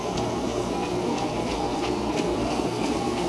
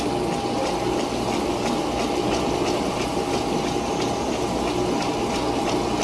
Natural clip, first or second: second